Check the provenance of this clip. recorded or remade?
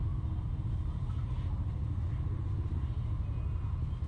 recorded